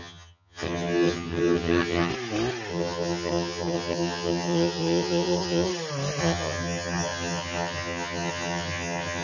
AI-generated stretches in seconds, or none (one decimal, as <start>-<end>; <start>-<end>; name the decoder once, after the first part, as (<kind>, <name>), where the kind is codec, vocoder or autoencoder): 0.0-2.1 (vocoder, HiFi-GAN); 2.7-5.7; 6.2-9.2